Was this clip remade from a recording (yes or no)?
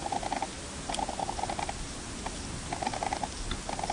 no